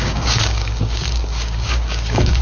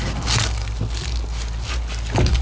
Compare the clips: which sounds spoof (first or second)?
first